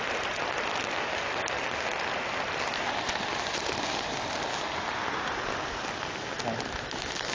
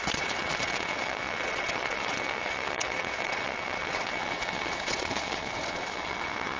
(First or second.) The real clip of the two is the first